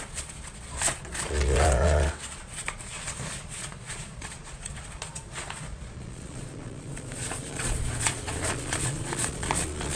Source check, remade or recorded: remade